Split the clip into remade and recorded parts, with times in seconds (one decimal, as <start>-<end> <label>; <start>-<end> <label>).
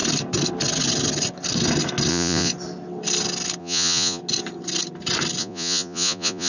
0.0-2.1 recorded; 2.1-2.5 remade; 2.5-3.6 recorded; 3.6-4.2 remade; 4.2-5.4 recorded; 5.4-6.5 remade